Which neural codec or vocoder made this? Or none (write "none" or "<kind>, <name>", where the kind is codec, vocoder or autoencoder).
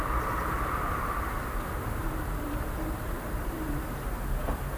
vocoder, BigVGAN v2